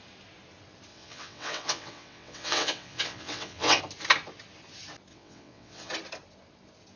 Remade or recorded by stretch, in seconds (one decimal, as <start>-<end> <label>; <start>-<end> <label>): 0.0-0.9 recorded; 0.9-3.8 remade; 3.8-5.1 recorded; 5.1-5.9 remade; 5.9-7.0 recorded